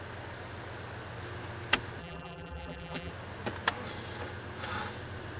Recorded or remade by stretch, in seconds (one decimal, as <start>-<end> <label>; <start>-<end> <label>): 0.0-2.0 recorded; 2.0-3.1 remade; 3.1-5.4 recorded